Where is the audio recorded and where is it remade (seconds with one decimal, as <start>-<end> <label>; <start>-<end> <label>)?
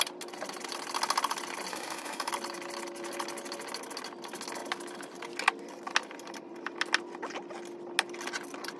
0.0-1.7 recorded; 1.7-2.3 remade; 2.3-8.8 recorded